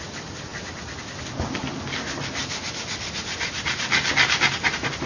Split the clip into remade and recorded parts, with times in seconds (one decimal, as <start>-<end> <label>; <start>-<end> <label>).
0.0-5.1 recorded

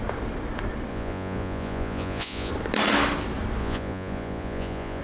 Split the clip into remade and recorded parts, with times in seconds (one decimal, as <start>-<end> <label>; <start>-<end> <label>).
0.0-0.9 recorded; 0.9-2.5 remade; 2.5-3.6 recorded; 3.6-5.0 remade

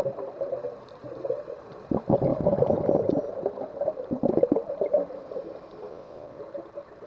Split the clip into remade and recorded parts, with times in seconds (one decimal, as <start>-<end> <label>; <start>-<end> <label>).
0.0-5.9 recorded; 5.9-6.4 remade; 6.4-7.1 recorded

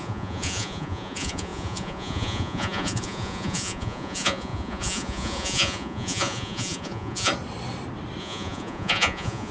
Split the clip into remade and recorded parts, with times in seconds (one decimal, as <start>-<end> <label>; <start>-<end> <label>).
0.0-7.3 remade; 7.3-8.2 recorded; 8.2-9.5 remade

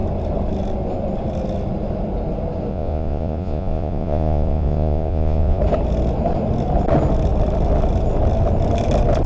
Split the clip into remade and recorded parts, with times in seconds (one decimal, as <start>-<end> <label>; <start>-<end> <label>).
0.0-2.7 recorded; 2.7-5.6 remade; 5.6-9.3 recorded

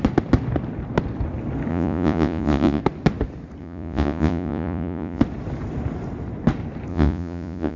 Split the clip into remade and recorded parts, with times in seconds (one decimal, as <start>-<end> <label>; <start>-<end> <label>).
0.0-1.7 recorded; 1.7-2.8 remade; 2.8-3.6 recorded; 3.6-5.2 remade; 5.2-6.9 recorded; 6.9-7.8 remade